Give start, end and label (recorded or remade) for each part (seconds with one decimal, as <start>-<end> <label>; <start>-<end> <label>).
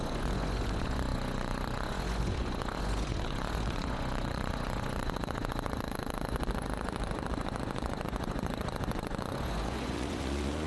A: 0.0-10.7 remade